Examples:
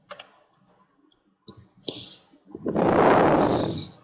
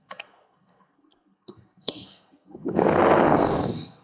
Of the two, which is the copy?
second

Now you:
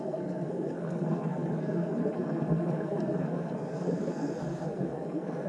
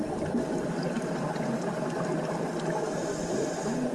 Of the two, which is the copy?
first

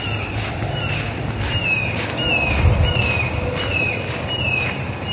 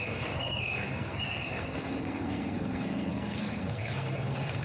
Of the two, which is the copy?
second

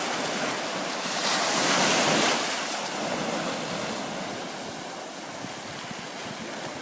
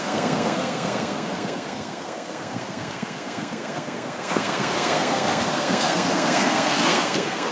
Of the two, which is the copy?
second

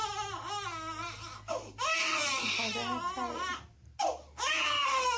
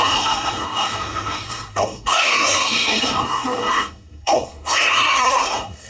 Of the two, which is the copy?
second